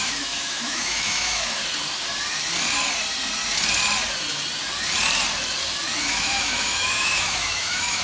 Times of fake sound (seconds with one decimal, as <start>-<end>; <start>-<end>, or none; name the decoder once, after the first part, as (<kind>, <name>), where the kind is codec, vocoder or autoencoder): 0.0-1.6 (autoencoder, DAC-VAE); 6.0-8.0